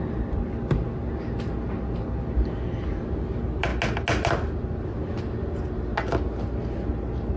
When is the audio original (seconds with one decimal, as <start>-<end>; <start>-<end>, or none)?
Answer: 0.0-7.4